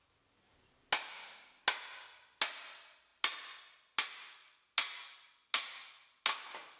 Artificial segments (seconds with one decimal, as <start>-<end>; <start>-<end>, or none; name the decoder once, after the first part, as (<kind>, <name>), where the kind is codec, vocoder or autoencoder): 1.1-1.6 (autoencoder, DAC-VAE)